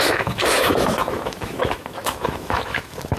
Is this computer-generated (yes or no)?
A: yes